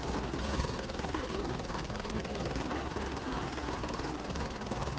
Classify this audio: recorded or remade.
remade